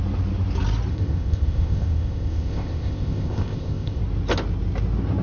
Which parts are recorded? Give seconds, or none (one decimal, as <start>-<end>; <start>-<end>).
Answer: 0.0-0.9; 4.0-5.2